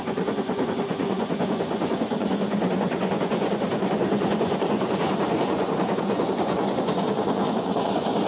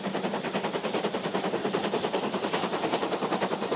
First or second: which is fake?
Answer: first